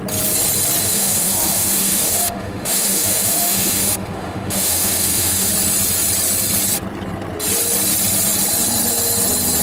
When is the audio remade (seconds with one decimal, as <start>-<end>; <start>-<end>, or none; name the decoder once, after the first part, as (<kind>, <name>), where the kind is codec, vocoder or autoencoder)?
0.8-5.5 (autoencoder, DAC-VAE)